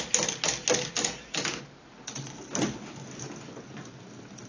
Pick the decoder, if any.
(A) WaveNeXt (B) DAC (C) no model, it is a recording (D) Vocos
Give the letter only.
C